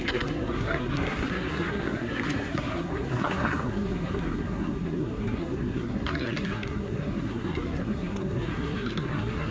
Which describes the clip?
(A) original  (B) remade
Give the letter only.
B